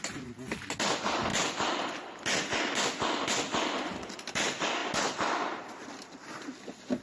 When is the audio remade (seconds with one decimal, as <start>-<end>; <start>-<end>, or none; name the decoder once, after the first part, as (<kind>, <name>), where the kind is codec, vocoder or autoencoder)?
none